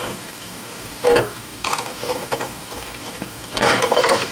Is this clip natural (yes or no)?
no